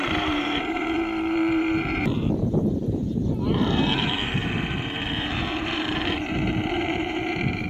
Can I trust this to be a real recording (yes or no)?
no